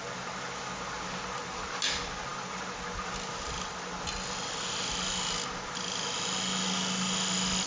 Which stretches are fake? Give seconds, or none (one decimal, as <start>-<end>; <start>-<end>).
none